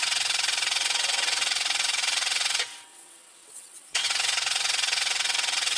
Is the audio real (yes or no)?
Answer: no